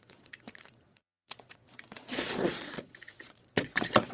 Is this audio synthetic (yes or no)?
yes